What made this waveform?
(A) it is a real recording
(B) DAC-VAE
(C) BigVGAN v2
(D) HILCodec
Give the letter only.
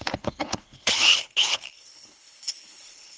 D